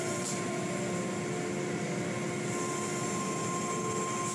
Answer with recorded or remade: recorded